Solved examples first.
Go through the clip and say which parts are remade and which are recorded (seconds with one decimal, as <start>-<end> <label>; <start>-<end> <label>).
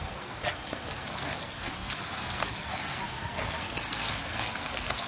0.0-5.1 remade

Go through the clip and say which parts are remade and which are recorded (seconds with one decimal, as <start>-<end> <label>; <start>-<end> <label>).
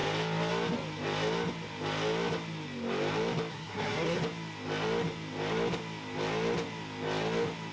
0.0-3.5 recorded; 3.5-4.2 remade; 4.2-7.7 recorded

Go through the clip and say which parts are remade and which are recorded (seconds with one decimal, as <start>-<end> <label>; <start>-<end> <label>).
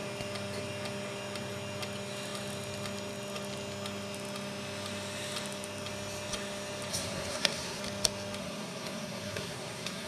0.0-6.9 recorded; 6.9-7.8 remade; 7.8-8.4 recorded; 8.4-10.1 remade